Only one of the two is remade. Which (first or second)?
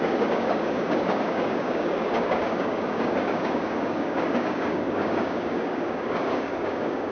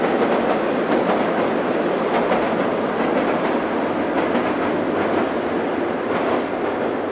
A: first